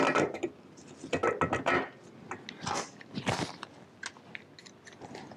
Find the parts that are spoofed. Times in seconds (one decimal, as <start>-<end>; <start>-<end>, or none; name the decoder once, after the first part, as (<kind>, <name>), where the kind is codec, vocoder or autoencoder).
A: none